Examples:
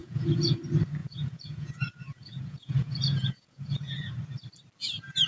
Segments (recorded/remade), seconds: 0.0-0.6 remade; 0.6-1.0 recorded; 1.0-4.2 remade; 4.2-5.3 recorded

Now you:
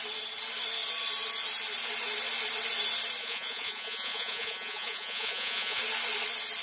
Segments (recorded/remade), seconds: 0.0-3.2 recorded; 3.2-5.8 remade; 5.8-6.6 recorded

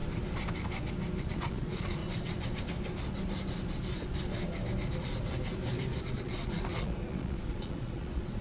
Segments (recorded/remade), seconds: 0.0-1.2 recorded; 1.2-2.0 remade; 2.0-6.0 recorded; 6.0-8.4 remade

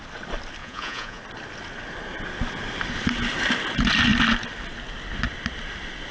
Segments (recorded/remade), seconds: 0.0-0.6 recorded; 0.6-1.2 remade; 1.2-6.1 recorded

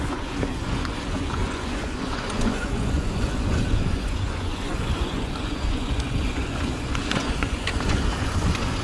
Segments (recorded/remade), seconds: 0.0-8.8 remade

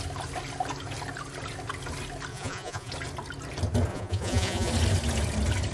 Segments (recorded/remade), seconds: 0.0-2.3 recorded; 2.3-2.9 remade; 2.9-3.9 recorded; 3.9-4.7 remade; 4.7-5.7 recorded